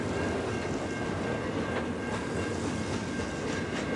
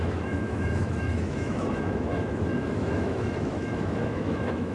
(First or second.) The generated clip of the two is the second